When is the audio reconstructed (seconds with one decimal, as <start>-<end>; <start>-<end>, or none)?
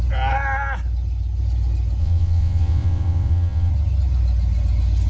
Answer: 2.0-3.7